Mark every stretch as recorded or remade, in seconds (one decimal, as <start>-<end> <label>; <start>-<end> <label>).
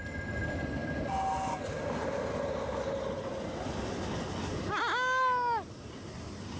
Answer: 0.0-6.6 recorded